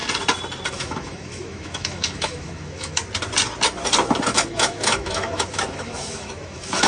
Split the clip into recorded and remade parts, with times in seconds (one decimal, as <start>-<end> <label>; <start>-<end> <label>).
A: 0.0-0.7 recorded; 0.7-3.0 remade; 3.0-4.3 recorded; 4.3-6.9 remade